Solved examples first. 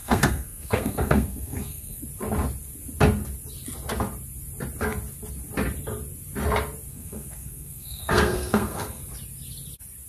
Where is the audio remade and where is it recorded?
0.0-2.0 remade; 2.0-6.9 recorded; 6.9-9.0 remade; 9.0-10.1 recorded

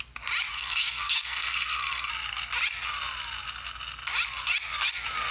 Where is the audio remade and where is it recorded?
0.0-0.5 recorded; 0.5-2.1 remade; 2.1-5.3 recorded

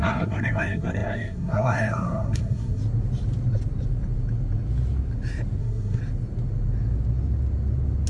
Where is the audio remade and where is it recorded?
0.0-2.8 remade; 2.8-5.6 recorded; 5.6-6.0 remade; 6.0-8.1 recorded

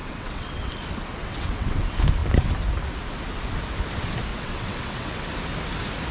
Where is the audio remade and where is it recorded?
0.0-0.7 remade; 0.7-1.2 recorded; 1.2-1.8 remade; 1.8-4.3 recorded; 4.3-5.3 remade; 5.3-6.1 recorded

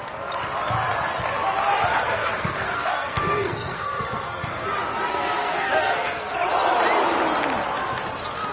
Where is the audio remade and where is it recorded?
0.0-1.9 recorded; 1.9-4.5 remade; 4.5-5.1 recorded; 5.1-6.3 remade; 6.3-8.5 recorded